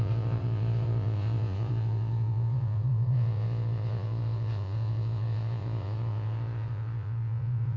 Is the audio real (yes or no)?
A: no